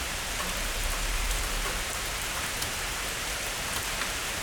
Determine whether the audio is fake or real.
fake